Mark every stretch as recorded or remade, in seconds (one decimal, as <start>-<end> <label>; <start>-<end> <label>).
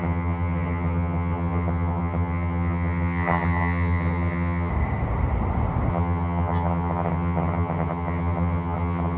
0.0-4.7 remade; 4.7-5.9 recorded; 5.9-9.2 remade